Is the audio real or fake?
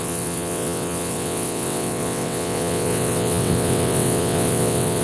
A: fake